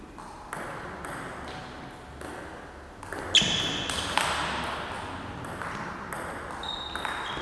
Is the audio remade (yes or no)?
no